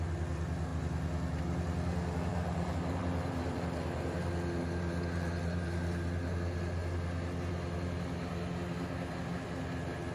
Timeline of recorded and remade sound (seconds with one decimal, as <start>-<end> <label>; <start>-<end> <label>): 0.0-2.3 recorded; 2.3-4.3 remade; 4.3-10.1 recorded